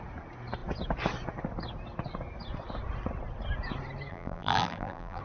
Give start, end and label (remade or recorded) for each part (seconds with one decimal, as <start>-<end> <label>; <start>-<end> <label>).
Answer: 0.0-4.1 recorded; 4.1-5.2 remade